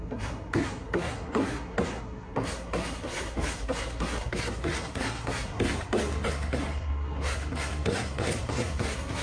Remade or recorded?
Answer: remade